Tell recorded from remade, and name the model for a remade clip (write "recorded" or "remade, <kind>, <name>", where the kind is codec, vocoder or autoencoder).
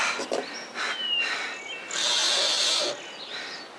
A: recorded